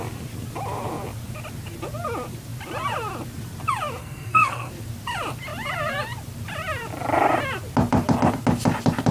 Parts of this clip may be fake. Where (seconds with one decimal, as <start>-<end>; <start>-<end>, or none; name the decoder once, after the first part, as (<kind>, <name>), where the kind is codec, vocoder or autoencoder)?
4.0-4.7 (codec, SNAC)